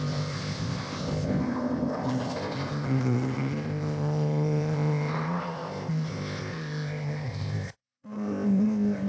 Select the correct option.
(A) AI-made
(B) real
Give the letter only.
A